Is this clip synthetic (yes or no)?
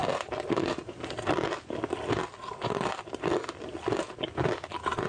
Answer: no